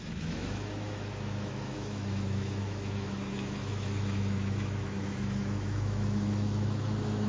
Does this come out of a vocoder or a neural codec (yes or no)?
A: yes